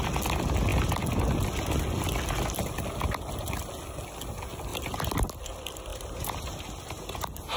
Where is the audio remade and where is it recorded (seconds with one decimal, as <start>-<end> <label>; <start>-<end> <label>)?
0.0-5.9 recorded; 5.9-7.6 remade